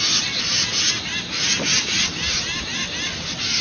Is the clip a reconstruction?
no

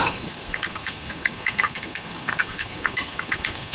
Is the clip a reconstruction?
yes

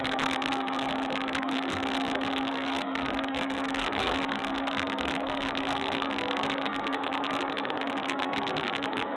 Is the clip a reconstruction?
yes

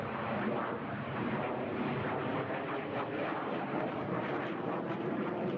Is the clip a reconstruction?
yes